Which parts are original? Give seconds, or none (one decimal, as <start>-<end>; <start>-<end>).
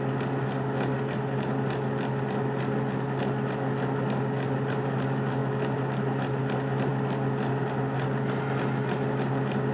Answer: 0.0-9.7